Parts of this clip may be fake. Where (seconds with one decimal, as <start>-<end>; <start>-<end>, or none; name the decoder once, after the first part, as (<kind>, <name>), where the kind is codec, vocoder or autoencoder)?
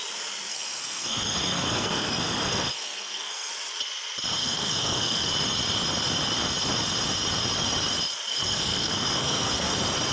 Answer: 0.5-3.5 (codec, SNAC); 4.4-5.3; 8.3-9.7